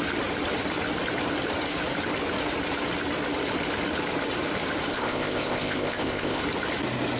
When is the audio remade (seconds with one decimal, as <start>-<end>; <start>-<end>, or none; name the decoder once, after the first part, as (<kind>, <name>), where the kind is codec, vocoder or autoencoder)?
4.9-6.4 (codec, ZipCodec)